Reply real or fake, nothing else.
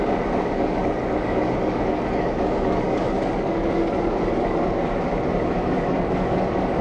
fake